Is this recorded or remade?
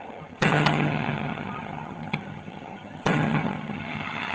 remade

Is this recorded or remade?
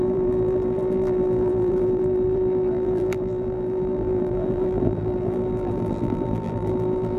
remade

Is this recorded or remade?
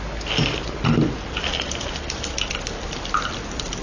recorded